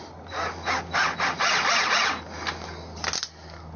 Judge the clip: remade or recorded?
recorded